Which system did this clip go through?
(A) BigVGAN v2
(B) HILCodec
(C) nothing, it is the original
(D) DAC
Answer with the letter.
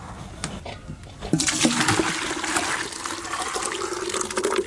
C